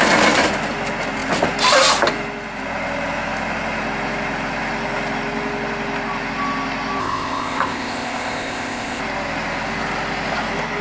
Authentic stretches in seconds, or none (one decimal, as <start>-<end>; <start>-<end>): 0.0-7.0; 9.0-10.8